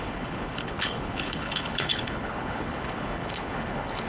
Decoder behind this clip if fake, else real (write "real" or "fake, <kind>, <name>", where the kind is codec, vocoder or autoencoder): fake, codec, HILCodec